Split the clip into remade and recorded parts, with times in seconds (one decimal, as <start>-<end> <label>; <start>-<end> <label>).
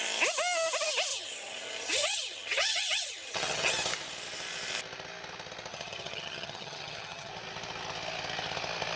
0.0-1.1 recorded; 1.1-3.7 remade; 3.7-5.7 recorded; 5.7-7.3 remade; 7.3-9.0 recorded